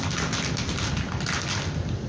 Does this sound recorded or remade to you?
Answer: recorded